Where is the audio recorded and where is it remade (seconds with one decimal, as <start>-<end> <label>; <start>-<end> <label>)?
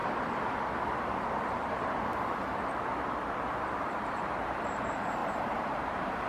0.0-3.8 recorded; 3.8-6.3 remade